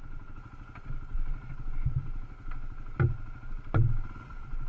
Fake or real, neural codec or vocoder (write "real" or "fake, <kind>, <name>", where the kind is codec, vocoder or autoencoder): real